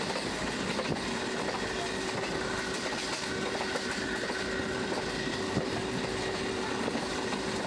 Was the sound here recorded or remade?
recorded